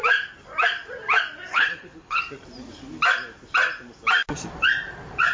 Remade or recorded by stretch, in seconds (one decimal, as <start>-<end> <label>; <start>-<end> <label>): 0.0-1.5 recorded; 1.5-2.2 remade; 2.2-5.3 recorded